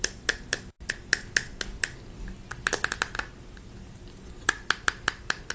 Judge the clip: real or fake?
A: real